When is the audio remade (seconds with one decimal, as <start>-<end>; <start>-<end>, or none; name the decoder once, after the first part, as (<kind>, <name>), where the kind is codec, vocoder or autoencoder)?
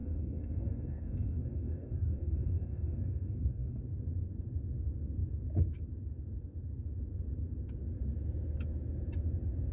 0.0-3.8 (codec, DAC)